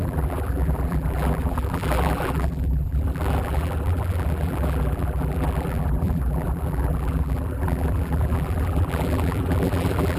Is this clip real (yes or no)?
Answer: no